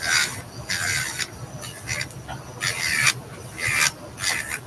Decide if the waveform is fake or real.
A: real